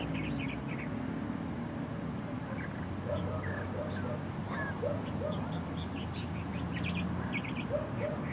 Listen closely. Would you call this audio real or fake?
real